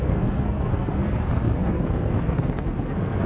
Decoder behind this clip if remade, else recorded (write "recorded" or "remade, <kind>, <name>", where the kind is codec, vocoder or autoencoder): remade, codec, SNAC